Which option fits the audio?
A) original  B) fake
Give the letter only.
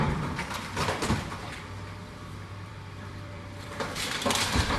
B